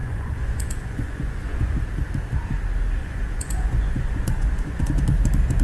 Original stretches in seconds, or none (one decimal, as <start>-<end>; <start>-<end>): 1.8-3.0; 4.9-5.6